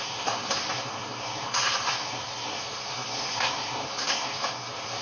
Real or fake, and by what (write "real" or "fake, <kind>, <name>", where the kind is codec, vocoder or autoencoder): fake, codec, SNAC